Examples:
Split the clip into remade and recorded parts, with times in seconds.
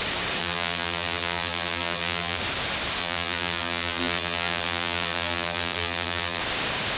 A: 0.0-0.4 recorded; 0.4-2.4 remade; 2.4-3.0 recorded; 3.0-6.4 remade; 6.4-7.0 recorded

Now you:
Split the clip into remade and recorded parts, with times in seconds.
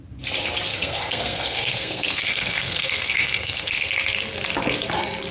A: 0.0-0.7 recorded; 0.7-3.9 remade; 3.9-5.3 recorded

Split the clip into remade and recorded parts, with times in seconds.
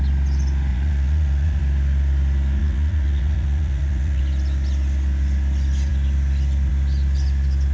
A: 0.0-0.7 recorded; 0.7-1.6 remade; 1.6-2.6 recorded; 2.6-4.2 remade; 4.2-7.7 recorded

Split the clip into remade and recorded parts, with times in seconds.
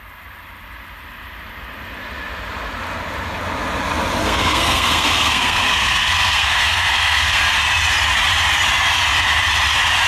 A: 0.0-4.2 recorded; 4.2-7.4 remade; 7.4-10.1 recorded